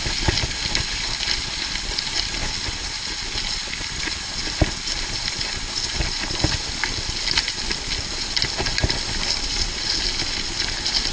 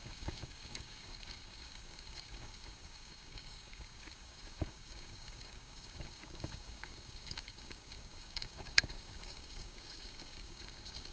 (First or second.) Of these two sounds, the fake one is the second